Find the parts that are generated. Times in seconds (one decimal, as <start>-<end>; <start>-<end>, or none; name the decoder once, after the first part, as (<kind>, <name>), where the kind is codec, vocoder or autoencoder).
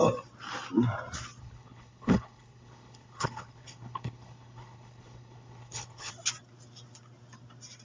1.4-6.1 (codec, HILCodec)